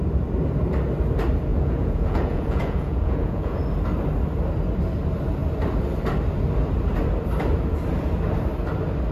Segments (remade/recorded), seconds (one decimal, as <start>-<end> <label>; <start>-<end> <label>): 0.0-1.5 recorded; 1.5-3.6 remade; 3.6-9.1 recorded